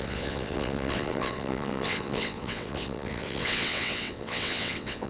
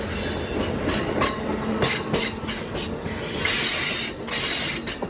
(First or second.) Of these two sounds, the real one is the second